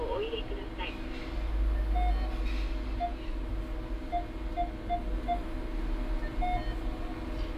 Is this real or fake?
real